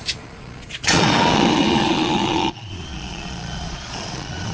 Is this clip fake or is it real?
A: fake